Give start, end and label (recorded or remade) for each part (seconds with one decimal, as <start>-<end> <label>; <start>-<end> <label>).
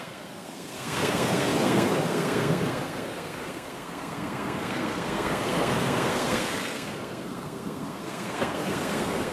0.0-9.3 remade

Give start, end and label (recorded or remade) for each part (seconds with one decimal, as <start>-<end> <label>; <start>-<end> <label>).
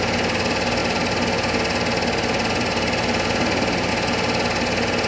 0.0-5.1 recorded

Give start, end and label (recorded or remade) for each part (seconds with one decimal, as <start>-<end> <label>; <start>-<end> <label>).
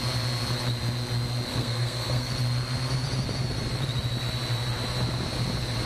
0.0-1.5 recorded; 1.5-2.3 remade; 2.3-5.9 recorded